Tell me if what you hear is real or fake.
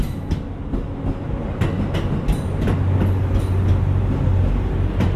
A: real